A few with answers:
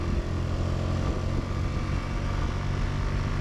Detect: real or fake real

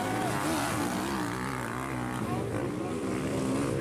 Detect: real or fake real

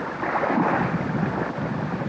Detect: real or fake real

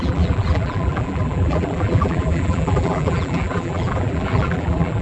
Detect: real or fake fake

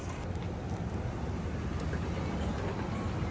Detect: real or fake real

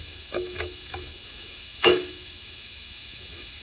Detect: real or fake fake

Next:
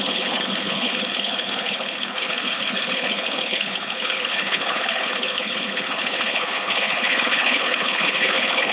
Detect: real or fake fake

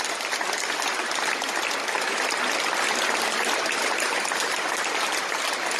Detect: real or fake real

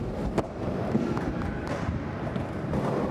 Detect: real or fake fake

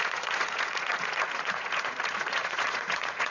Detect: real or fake fake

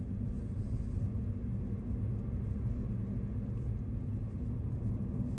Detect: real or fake real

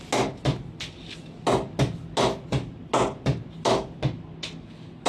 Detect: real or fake real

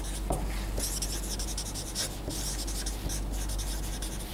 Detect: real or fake real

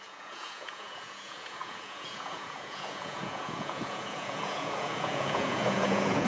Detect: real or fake fake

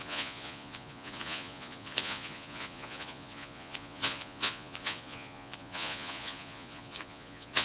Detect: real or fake fake